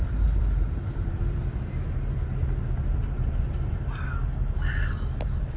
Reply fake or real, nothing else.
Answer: fake